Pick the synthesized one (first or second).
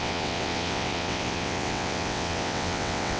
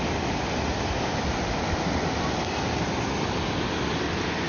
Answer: first